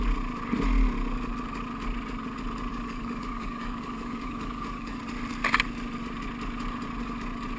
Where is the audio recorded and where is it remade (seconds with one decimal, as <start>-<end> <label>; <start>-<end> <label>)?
0.0-2.7 recorded; 2.7-5.0 remade; 5.0-7.6 recorded